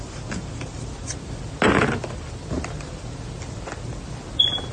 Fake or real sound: real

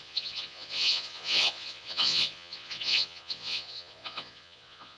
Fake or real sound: fake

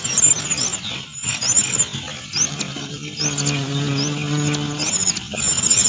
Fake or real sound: real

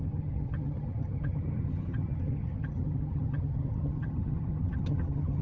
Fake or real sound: fake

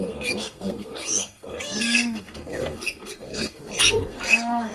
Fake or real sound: fake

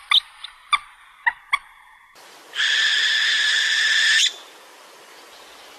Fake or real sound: real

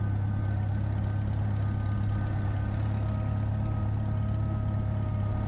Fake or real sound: real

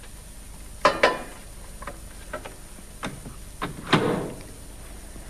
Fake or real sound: real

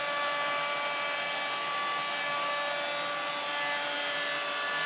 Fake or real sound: real